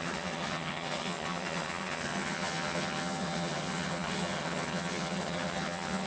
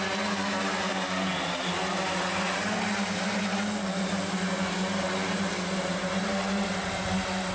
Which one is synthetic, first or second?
first